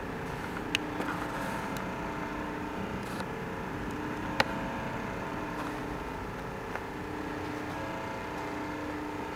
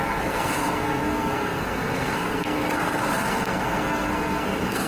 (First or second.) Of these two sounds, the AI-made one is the second